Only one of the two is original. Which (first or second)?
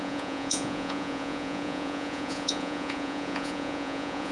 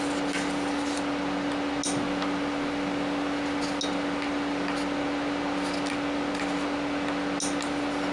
second